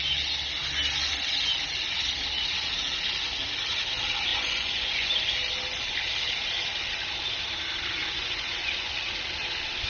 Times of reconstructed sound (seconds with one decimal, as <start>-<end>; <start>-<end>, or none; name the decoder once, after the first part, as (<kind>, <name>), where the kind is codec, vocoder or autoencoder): 4.3-5.1 (vocoder, Vocos); 8.0-8.9